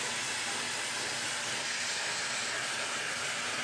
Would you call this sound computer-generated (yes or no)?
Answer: no